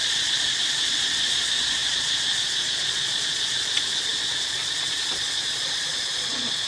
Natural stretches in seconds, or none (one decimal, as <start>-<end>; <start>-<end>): none